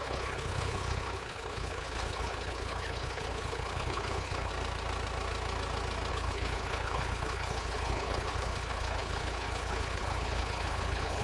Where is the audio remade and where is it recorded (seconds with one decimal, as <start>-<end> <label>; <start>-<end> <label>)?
0.0-4.5 remade; 4.5-6.1 recorded; 6.1-11.2 remade